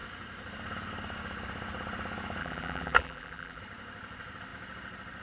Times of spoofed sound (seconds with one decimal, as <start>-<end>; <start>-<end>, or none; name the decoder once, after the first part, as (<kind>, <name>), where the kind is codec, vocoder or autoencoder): 2.4-3.6 (vocoder, BigVGAN v2)